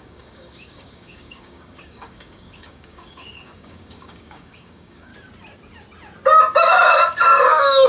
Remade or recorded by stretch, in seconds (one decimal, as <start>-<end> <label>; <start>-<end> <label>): 0.0-5.1 remade; 5.1-6.6 recorded; 6.6-7.9 remade